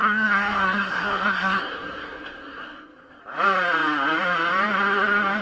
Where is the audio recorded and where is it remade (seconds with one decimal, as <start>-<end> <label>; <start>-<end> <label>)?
0.0-3.2 remade; 3.2-5.4 recorded